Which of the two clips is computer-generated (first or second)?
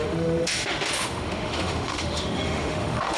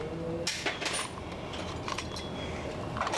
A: first